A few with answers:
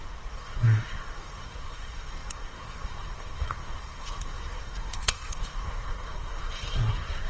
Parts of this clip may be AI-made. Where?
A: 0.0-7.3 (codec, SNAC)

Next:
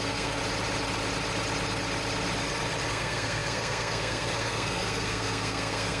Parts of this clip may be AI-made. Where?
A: 0.0-0.4 (codec, SNAC); 2.9-6.0

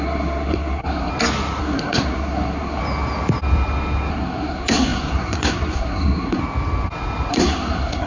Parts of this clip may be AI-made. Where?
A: 0.0-1.1 (codec, SNAC); 1.6-2.8; 4.1-6.4; 7.3-8.1

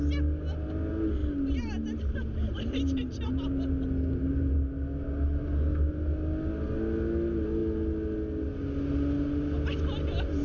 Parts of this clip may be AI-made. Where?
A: none